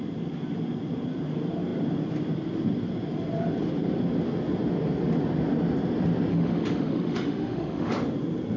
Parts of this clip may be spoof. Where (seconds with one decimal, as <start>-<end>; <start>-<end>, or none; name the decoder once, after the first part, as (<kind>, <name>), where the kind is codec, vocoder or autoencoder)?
6.3-7.9 (autoencoder, DAC-VAE)